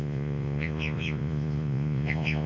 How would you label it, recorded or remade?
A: remade